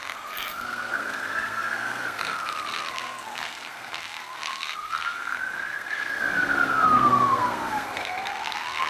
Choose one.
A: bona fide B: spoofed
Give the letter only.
B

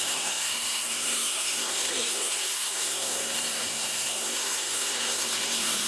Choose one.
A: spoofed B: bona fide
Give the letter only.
A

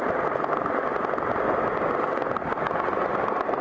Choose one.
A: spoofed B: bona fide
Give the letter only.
B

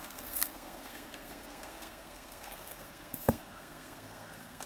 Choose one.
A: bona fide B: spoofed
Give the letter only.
B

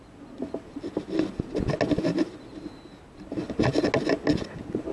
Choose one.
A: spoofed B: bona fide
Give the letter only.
B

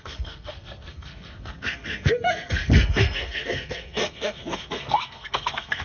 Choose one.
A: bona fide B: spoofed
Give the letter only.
B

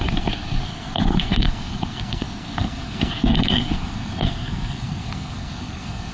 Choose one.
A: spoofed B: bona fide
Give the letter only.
A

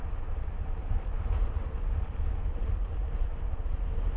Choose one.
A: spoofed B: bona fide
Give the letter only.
B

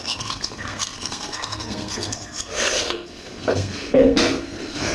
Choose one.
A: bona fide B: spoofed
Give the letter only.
B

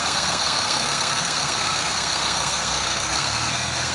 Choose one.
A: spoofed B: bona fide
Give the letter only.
A